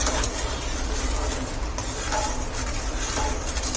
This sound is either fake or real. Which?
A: real